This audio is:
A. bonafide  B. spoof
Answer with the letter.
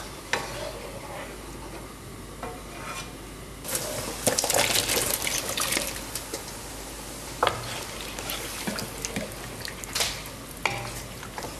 A